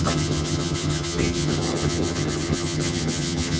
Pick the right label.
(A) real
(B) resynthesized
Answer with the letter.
B